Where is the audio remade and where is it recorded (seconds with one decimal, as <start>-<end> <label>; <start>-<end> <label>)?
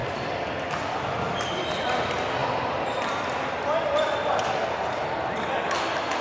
0.0-1.2 remade; 1.2-2.4 recorded; 2.4-5.2 remade; 5.2-6.2 recorded